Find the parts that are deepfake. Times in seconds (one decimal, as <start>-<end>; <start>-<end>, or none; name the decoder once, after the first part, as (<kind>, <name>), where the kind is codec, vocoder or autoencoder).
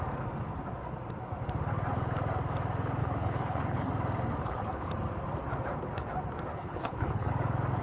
3.0-3.9 (codec, HILCodec); 4.4-4.9; 6.5-7.3